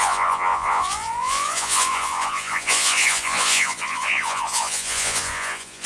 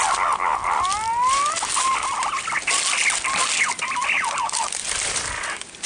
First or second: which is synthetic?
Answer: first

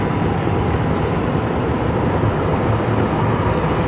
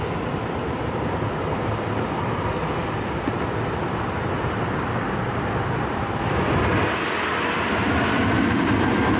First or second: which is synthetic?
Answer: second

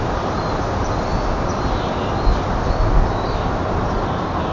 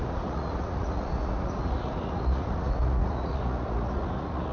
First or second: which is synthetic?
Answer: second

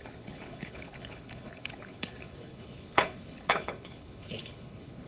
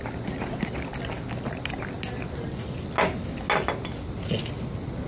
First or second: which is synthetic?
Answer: first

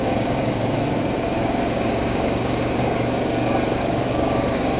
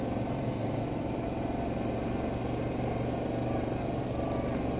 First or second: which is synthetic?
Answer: first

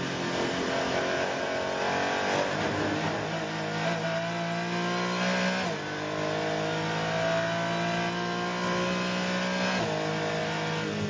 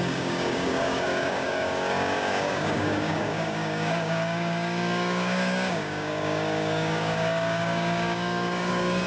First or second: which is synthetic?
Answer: second